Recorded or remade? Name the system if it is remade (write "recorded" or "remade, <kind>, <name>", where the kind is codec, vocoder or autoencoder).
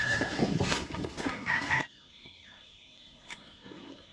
remade, codec, SNAC